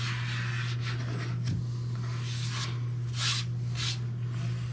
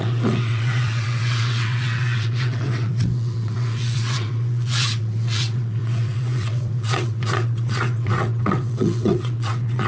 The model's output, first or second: second